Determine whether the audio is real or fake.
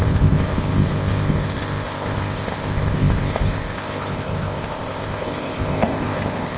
fake